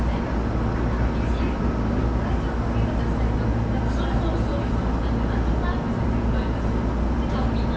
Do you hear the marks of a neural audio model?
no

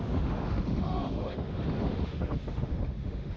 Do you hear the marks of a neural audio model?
yes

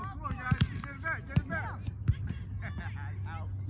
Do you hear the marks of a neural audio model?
no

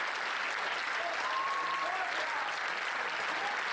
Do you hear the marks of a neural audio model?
no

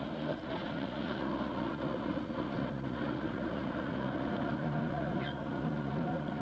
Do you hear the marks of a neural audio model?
yes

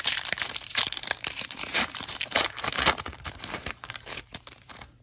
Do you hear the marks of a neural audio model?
yes